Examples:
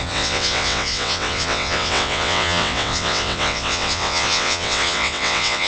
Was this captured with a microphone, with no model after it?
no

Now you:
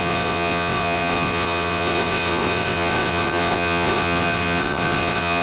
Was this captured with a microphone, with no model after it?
no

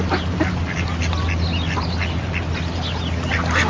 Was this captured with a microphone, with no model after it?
yes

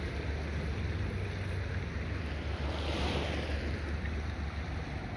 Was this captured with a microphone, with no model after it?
yes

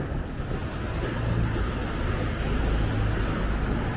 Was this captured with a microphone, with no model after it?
yes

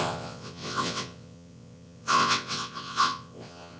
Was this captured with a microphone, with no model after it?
no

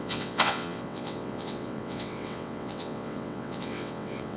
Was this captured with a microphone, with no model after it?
no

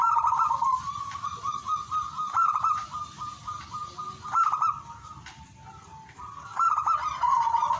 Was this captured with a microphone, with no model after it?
yes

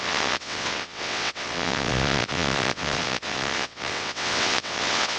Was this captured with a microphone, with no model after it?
no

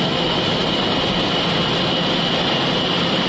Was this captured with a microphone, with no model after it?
yes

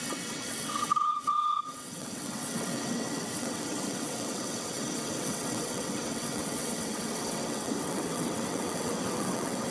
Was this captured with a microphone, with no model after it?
no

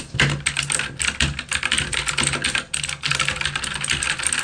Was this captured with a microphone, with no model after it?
yes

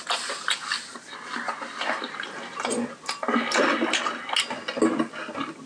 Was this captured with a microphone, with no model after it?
yes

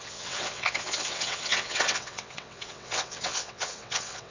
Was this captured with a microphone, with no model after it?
no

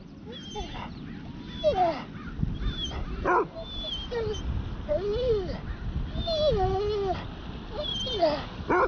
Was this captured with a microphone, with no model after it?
yes